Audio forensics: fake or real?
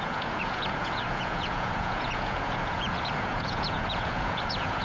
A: fake